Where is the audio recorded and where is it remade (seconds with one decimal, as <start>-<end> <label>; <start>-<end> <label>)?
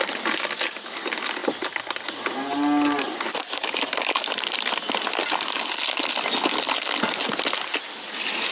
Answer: 0.0-8.5 recorded